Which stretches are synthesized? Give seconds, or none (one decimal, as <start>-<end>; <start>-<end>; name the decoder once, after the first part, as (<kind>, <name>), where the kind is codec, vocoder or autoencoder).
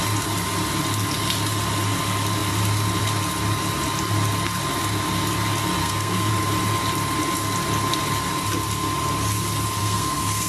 5.8-6.3 (codec, SNAC); 9.8-10.5